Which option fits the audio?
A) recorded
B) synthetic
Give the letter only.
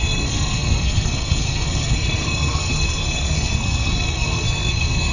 B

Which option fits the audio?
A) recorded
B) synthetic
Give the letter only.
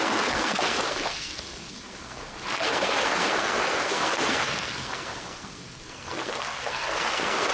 B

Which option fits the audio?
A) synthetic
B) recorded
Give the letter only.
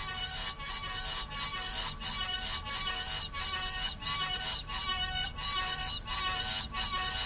B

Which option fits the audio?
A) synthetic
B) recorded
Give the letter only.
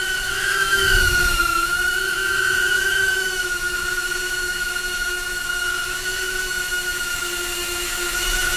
A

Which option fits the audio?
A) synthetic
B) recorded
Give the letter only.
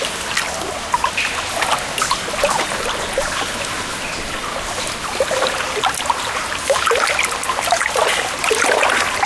B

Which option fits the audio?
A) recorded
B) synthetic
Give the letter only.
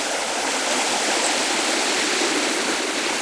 A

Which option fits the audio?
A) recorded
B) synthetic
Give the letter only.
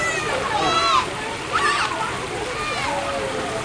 A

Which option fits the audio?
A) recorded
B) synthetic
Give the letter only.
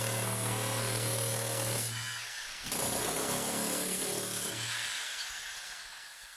B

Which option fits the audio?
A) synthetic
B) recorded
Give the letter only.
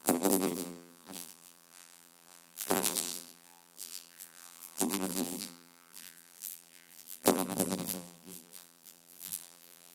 A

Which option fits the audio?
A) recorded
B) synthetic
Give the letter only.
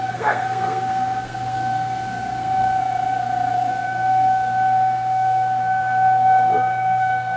B